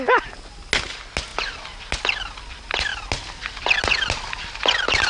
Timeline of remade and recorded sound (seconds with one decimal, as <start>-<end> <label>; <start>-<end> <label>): 0.0-5.1 recorded